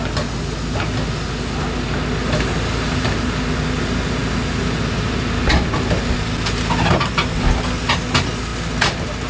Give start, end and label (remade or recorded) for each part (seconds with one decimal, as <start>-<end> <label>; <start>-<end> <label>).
0.0-9.3 recorded